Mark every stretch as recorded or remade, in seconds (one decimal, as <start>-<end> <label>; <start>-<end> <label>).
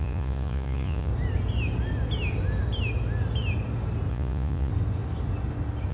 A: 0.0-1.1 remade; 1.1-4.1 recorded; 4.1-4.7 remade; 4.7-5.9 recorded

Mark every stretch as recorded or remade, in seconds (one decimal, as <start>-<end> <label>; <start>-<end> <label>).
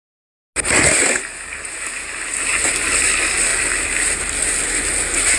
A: 0.0-5.4 recorded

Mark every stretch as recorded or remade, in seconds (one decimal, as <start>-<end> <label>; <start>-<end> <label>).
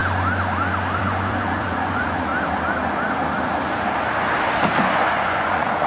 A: 0.0-1.0 recorded; 1.0-2.3 remade; 2.3-4.8 recorded; 4.8-5.9 remade